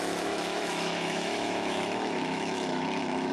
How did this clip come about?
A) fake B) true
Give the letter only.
A